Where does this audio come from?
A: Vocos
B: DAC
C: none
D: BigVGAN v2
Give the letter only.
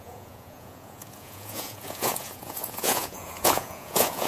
A